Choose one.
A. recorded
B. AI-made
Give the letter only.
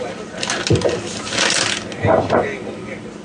A